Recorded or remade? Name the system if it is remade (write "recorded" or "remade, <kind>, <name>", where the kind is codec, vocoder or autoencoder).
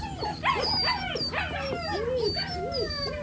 recorded